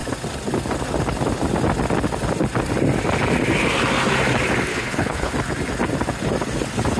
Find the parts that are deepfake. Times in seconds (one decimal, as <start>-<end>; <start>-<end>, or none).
4.7-5.3